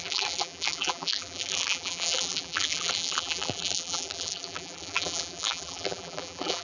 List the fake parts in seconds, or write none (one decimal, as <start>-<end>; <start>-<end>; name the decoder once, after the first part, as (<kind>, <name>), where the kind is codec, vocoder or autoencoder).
0.0-6.6 (vocoder, BigVGAN v2)